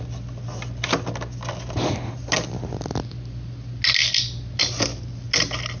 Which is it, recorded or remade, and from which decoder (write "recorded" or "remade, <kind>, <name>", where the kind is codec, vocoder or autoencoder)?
recorded